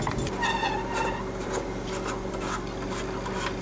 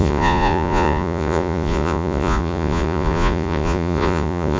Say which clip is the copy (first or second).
second